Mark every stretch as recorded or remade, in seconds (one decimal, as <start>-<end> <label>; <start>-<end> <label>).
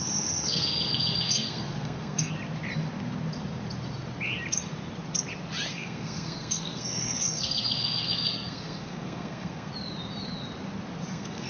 0.0-2.3 remade; 2.3-5.7 recorded; 5.7-9.7 remade; 9.7-11.1 recorded; 11.1-11.5 remade